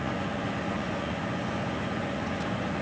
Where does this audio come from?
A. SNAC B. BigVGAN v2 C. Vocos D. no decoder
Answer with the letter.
C